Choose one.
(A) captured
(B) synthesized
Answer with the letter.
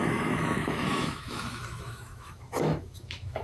B